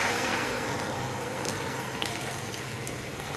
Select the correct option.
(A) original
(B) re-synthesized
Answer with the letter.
B